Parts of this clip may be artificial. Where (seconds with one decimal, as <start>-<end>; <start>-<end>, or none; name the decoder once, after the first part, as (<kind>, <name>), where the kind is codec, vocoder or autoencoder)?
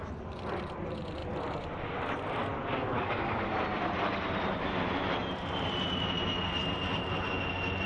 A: 2.8-3.5 (codec, DAC)